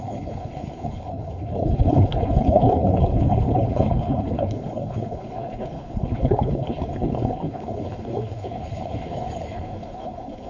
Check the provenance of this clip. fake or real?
fake